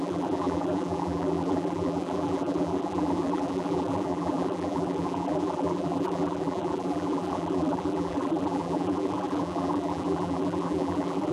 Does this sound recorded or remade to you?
remade